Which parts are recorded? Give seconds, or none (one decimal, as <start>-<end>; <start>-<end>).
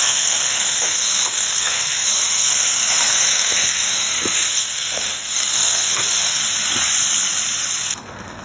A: 6.4-7.8